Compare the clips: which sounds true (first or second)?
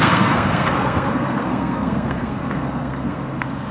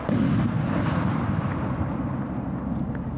second